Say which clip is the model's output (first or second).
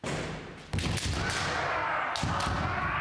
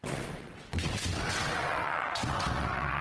second